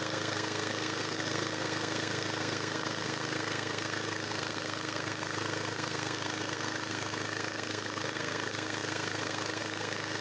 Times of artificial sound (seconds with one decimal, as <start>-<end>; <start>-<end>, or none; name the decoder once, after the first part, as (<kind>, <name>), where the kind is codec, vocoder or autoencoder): 0.0-10.2 (codec, SNAC)